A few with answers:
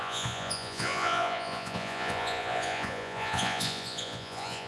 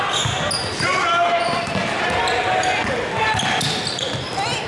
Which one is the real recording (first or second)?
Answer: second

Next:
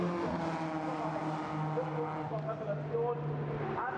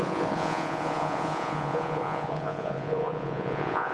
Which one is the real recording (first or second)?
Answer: first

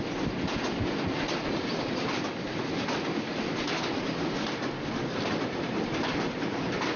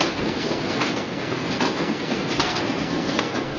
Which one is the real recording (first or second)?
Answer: first